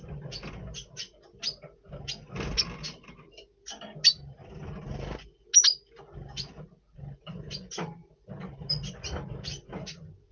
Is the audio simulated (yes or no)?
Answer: no